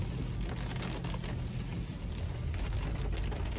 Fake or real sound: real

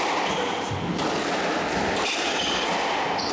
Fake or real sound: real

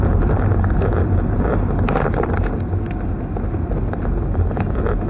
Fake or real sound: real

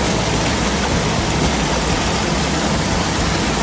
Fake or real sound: real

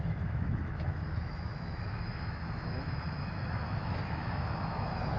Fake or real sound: fake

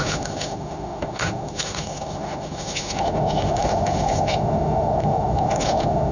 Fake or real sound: fake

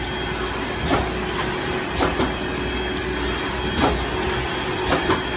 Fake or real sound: real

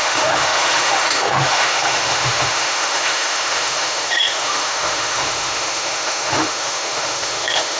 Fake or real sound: fake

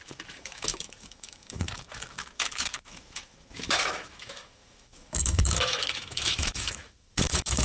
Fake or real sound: fake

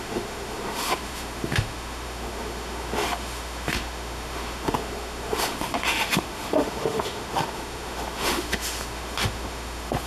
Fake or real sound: fake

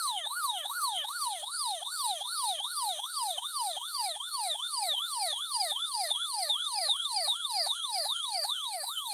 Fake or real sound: fake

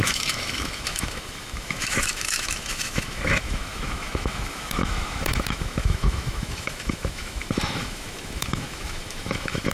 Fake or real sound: fake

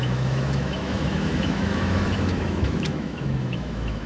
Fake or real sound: fake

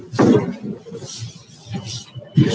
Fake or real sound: real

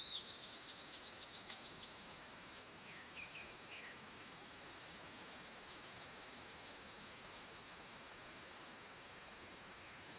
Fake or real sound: fake